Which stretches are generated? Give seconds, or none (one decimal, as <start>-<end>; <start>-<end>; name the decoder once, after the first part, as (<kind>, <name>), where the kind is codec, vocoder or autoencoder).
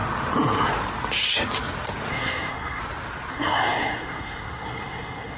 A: 2.1-2.8 (codec, SNAC); 3.3-5.4